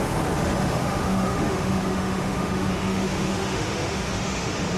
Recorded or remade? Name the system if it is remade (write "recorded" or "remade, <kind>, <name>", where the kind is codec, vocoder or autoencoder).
remade, autoencoder, DAC-VAE